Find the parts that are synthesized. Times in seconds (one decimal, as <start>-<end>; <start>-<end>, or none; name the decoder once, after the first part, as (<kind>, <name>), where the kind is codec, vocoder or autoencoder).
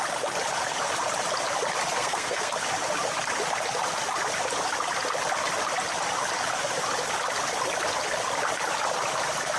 2.0-2.5 (codec, SNAC)